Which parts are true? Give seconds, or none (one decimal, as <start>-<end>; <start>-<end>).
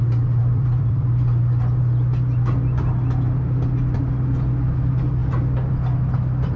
0.0-0.4; 1.8-6.6